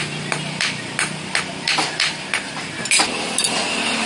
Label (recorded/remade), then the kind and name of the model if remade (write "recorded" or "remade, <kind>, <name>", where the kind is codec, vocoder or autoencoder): recorded